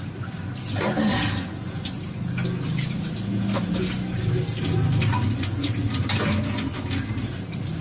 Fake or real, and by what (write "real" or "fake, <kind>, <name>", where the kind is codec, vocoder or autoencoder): real